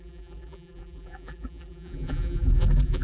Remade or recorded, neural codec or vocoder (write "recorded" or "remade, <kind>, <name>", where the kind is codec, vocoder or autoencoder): remade, vocoder, BigVGAN v2